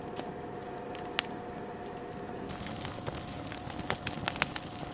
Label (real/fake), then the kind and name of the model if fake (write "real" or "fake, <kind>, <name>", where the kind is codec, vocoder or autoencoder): real